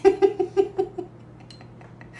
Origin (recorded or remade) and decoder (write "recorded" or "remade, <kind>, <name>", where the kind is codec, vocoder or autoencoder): recorded